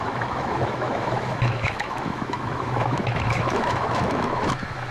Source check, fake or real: fake